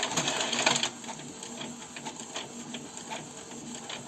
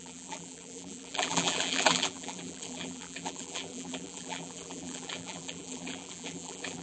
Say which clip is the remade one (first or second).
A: second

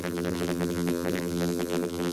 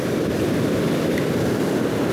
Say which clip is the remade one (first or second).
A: first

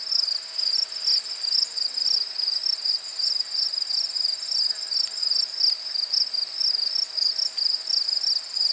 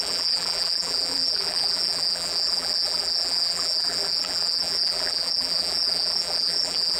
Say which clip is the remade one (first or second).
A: second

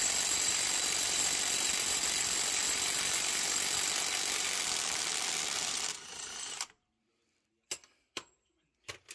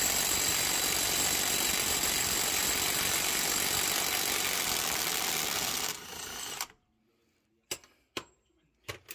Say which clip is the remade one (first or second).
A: first